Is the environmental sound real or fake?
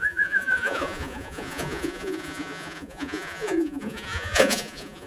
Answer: fake